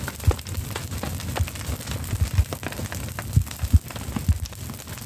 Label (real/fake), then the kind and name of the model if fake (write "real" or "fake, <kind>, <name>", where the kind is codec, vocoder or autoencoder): real